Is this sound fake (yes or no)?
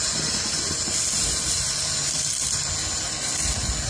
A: no